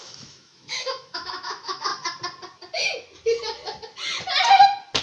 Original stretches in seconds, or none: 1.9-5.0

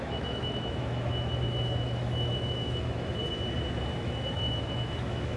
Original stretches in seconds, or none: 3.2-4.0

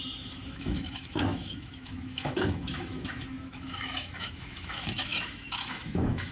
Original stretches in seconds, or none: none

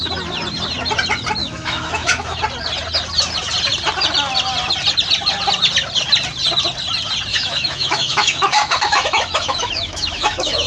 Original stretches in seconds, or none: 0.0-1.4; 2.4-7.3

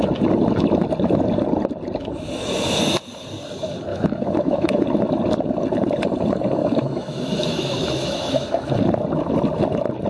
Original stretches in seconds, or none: 0.0-3.9; 4.8-6.6; 8.7-10.1

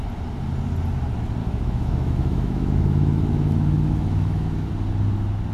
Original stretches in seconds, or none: 0.0-1.4; 4.7-5.5

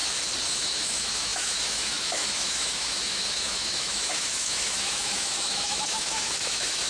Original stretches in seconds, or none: 0.0-0.5

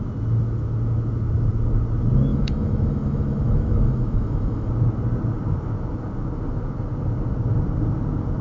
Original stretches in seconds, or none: 0.0-2.3; 4.7-8.4